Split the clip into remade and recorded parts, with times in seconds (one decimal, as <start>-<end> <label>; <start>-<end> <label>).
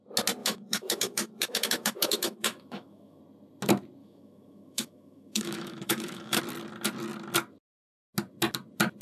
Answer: 0.0-0.4 recorded; 0.4-3.2 remade; 3.2-4.0 recorded; 4.0-6.4 remade; 6.4-9.0 recorded